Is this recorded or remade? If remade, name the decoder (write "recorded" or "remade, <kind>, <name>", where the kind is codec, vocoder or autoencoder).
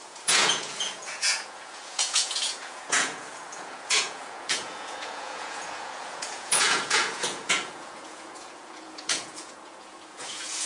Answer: remade, vocoder, Vocos